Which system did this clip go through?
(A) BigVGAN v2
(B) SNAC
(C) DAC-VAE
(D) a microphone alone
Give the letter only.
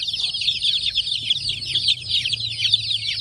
D